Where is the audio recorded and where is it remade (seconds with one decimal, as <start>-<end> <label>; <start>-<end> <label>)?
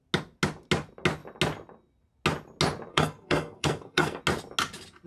0.0-2.9 recorded; 2.9-4.2 remade; 4.2-5.1 recorded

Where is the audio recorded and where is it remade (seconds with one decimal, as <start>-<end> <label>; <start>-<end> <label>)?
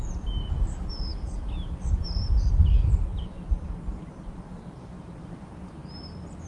0.0-3.1 recorded; 3.1-4.9 remade; 4.9-6.5 recorded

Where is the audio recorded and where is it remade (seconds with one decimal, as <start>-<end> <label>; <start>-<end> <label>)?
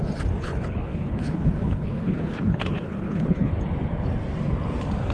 0.0-0.4 recorded; 0.4-3.5 remade; 3.5-5.1 recorded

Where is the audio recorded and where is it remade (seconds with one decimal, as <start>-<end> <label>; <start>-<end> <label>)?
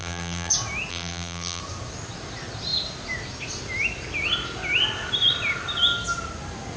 0.0-0.5 remade; 0.5-0.9 recorded; 0.9-1.6 remade; 1.6-6.8 recorded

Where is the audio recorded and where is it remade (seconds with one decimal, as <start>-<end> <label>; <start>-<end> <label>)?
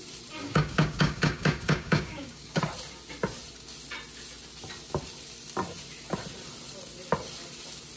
0.0-0.4 recorded; 0.4-2.6 remade; 2.6-8.0 recorded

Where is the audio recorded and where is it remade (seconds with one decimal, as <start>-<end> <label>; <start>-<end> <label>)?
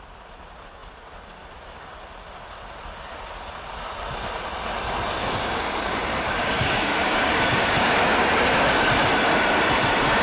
0.0-5.2 recorded; 5.2-8.0 remade; 8.0-10.2 recorded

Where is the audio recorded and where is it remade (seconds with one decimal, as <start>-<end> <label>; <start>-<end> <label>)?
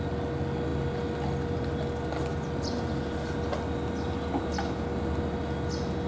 0.0-6.1 recorded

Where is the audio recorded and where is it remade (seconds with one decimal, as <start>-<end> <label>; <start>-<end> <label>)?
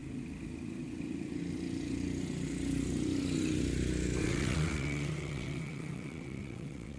0.0-4.2 recorded; 4.2-7.0 remade